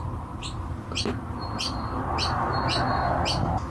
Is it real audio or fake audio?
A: real